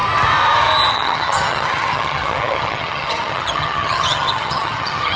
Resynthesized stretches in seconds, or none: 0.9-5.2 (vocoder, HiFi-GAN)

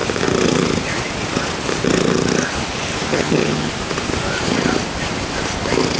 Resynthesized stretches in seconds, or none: 3.1-3.7 (vocoder, HiFi-GAN)

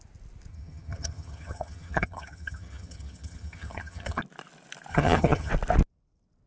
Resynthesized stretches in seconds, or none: 0.5-4.2 (vocoder, HiFi-GAN); 4.9-5.5

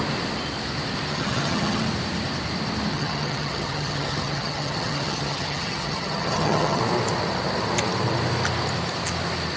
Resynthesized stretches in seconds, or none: 1.1-1.8 (vocoder, HiFi-GAN); 2.9-6.8

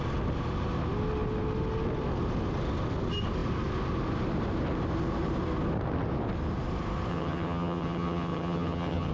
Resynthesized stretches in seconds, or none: 7.1-9.1 (vocoder, HiFi-GAN)

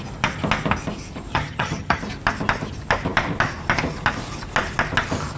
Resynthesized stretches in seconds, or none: 1.3-2.0 (vocoder, HiFi-GAN)

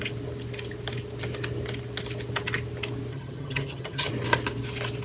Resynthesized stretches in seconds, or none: 3.1-4.1 (vocoder, HiFi-GAN)

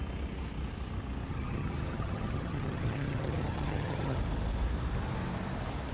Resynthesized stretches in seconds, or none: 1.3-4.2 (vocoder, HiFi-GAN)